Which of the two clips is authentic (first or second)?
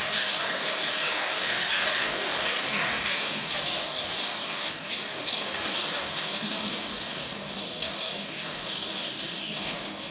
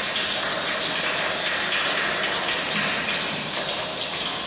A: second